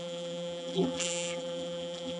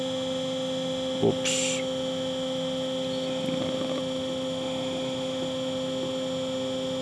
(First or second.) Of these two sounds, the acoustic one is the second